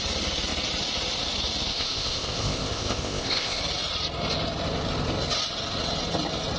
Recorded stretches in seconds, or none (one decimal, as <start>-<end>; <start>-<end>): 0.0-1.7; 3.6-6.6